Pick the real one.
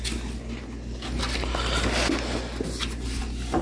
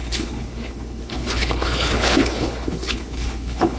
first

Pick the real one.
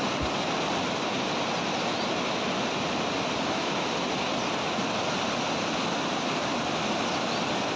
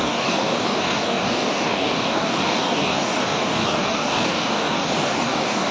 first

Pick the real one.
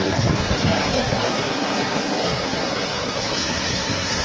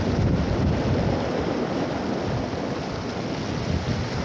second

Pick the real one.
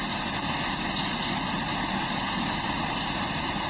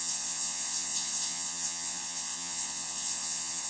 first